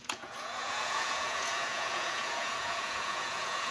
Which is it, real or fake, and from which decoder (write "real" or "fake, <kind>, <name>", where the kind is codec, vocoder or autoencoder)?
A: fake, vocoder, Vocos